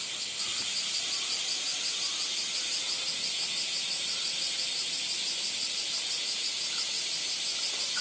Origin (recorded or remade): recorded